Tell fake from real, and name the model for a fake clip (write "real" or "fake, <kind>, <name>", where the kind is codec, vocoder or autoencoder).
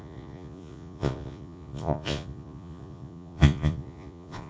fake, vocoder, Vocos